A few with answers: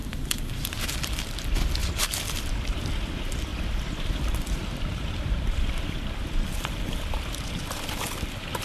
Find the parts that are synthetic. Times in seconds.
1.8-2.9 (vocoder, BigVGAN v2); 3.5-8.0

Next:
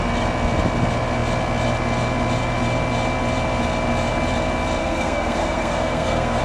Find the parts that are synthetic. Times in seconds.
4.8-6.4 (codec, SNAC)

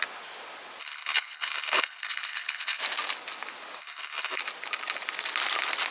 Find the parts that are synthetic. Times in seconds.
0.8-2.8 (codec, HILCodec); 3.8-4.4